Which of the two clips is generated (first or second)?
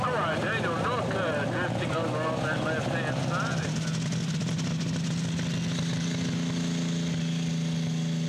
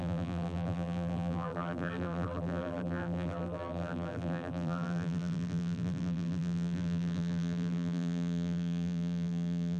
second